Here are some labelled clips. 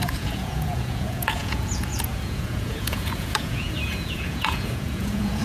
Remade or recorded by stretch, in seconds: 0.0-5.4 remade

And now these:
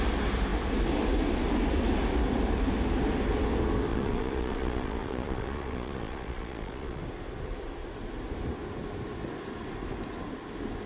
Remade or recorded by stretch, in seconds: 0.0-3.9 recorded; 3.9-7.0 remade; 7.0-10.9 recorded